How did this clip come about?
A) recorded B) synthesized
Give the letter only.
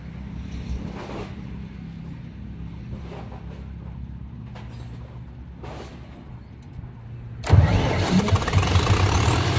A